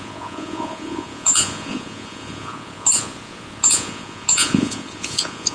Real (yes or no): no